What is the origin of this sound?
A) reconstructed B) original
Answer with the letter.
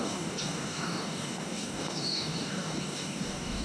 A